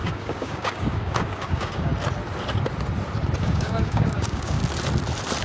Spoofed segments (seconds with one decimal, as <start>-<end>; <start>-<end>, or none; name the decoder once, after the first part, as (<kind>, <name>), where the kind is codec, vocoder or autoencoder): 0.0-1.9 (codec, DAC); 3.4-4.6